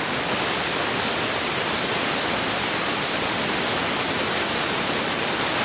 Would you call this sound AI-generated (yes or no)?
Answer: no